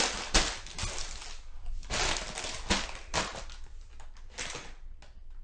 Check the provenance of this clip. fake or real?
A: real